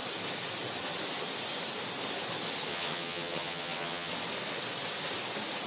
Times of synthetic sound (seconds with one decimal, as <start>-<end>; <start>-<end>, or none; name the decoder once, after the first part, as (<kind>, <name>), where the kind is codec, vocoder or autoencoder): 2.7-4.1 (vocoder, HiFi-GAN)